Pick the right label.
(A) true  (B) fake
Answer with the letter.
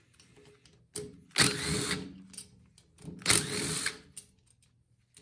A